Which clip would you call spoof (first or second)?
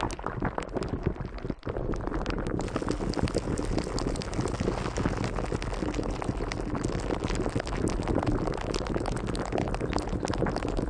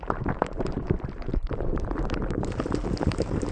second